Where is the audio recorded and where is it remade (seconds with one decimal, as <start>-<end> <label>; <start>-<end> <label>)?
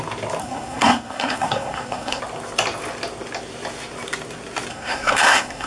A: 0.0-0.4 recorded; 0.4-2.2 remade; 2.2-4.7 recorded; 4.7-5.7 remade